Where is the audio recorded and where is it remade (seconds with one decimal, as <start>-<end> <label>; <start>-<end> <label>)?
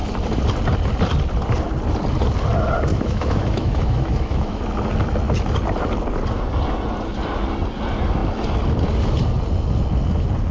0.0-2.9 recorded; 2.9-4.6 remade; 4.6-10.5 recorded